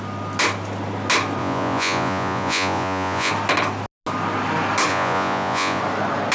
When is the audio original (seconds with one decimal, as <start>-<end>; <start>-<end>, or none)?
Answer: 0.0-1.4; 3.3-4.9; 5.8-6.3